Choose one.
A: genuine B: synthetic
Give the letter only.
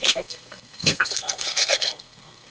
B